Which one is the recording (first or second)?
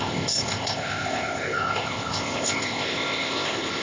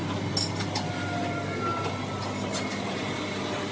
second